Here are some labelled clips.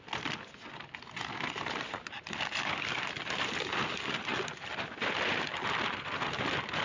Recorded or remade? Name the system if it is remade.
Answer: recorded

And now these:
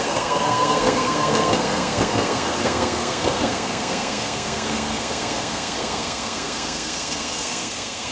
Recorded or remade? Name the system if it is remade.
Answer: remade, codec, SNAC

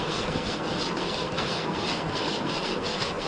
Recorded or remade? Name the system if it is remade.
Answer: remade, codec, SNAC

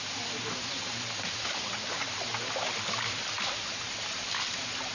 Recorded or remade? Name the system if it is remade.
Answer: recorded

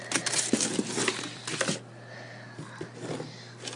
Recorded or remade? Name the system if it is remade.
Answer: recorded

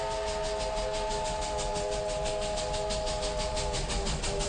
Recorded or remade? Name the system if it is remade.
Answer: recorded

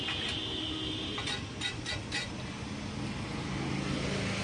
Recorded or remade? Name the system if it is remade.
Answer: recorded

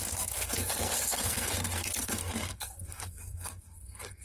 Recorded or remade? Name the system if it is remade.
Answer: remade, codec, SNAC